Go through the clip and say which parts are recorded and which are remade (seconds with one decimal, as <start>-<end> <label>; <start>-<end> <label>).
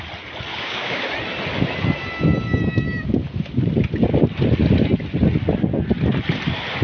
0.0-0.5 recorded; 0.5-1.0 remade; 1.0-6.8 recorded